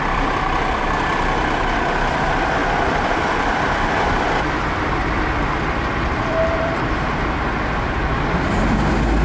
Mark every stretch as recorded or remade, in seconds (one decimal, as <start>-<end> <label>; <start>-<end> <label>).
0.0-9.2 remade